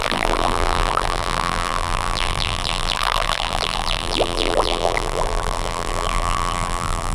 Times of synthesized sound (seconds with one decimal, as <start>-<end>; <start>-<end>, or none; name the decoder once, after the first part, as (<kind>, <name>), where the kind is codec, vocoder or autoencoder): 0.0-7.1 (vocoder, BigVGAN v2)